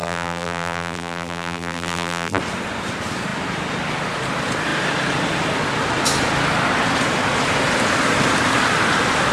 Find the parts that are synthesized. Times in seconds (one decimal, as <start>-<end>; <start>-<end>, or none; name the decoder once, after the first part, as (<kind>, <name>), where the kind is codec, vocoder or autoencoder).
0.0-2.4 (vocoder, BigVGAN v2)